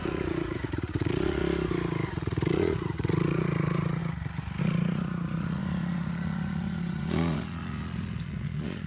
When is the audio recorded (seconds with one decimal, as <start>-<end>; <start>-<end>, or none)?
1.4-2.1; 4.0-4.6